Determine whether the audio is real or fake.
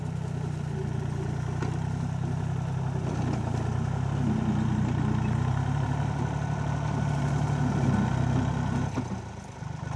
real